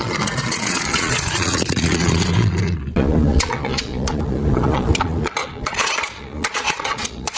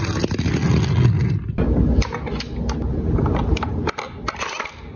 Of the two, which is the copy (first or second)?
first